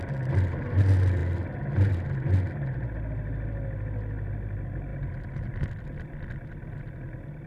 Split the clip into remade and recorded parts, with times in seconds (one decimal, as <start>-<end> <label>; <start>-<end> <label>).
0.0-7.5 recorded